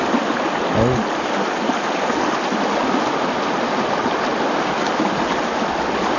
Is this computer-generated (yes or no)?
no